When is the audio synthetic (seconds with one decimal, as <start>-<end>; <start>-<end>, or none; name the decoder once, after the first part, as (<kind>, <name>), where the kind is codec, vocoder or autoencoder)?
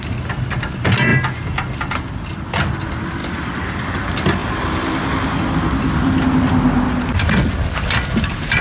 1.1-2.6 (vocoder, BigVGAN v2); 3.2-4.0